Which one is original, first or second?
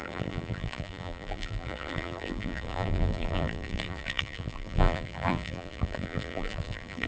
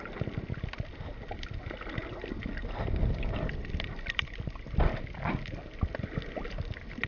second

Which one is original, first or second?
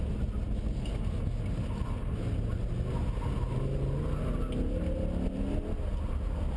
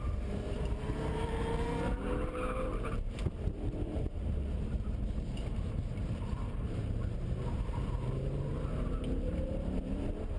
first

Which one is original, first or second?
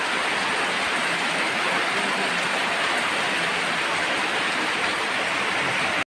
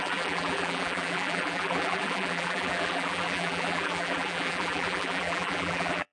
first